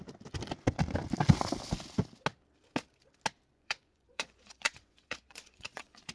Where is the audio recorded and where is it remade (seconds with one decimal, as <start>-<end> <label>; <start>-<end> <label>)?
0.0-3.5 recorded; 3.5-6.1 remade